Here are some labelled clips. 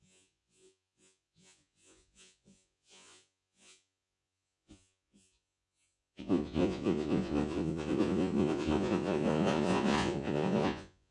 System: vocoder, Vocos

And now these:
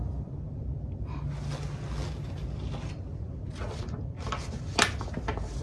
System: none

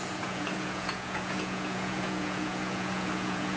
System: vocoder, Vocos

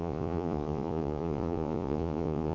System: vocoder, Vocos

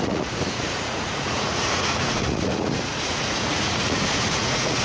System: vocoder, Vocos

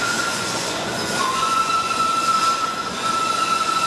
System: vocoder, Vocos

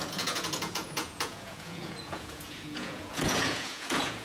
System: vocoder, Vocos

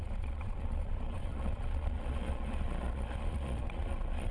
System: vocoder, Vocos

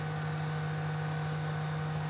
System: none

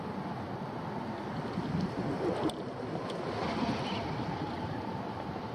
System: none